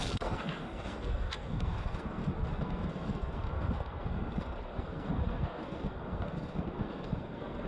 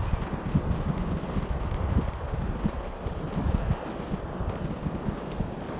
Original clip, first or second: second